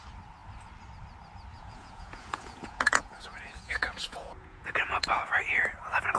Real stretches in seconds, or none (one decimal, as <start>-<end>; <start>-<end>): 0.0-1.5; 5.2-6.2